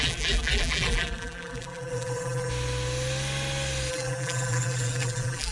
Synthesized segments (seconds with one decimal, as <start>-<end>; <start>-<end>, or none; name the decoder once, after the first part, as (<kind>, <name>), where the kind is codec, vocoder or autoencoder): 0.0-2.5 (vocoder, BigVGAN v2); 3.9-5.5